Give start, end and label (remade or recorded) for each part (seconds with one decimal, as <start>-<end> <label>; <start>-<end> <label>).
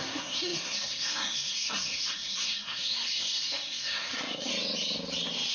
0.0-4.5 remade; 4.5-5.5 recorded